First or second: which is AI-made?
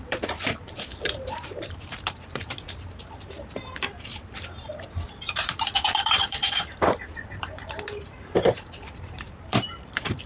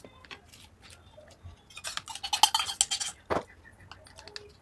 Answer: first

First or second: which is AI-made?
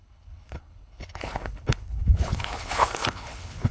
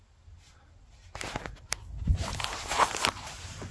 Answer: first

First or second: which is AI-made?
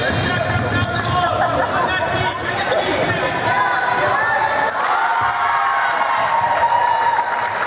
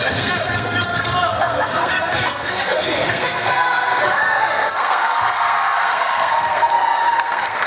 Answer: second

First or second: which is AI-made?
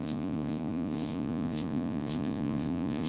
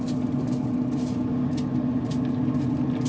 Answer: first